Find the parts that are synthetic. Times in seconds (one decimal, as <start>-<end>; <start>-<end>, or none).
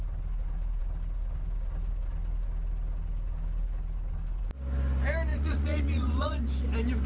5.3-6.4